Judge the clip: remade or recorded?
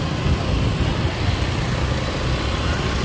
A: recorded